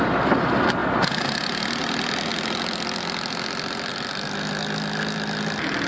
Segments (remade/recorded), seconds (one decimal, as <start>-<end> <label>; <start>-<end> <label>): 0.0-5.9 recorded